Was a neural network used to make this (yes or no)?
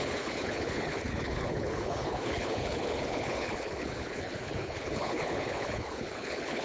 yes